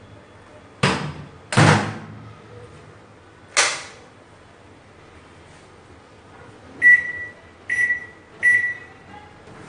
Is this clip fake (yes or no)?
no